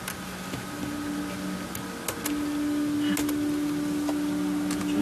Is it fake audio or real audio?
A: real